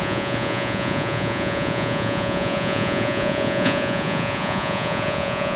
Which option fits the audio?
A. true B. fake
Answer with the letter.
B